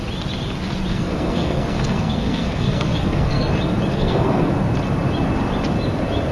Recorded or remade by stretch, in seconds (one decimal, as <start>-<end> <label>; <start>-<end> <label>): 0.0-0.9 recorded; 0.9-3.5 remade; 3.5-3.9 recorded; 3.9-4.5 remade; 4.5-6.3 recorded